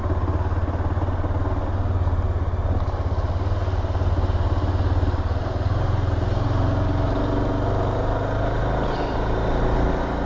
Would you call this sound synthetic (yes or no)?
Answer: no